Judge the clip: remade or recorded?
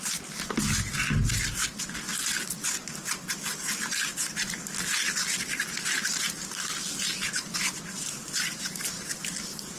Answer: recorded